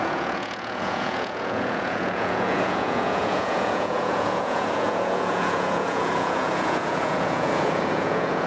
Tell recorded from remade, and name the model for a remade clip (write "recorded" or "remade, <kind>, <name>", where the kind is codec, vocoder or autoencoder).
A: remade, vocoder, Vocos